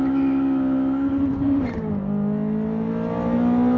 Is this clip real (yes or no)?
yes